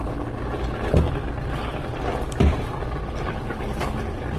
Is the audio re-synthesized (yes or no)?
no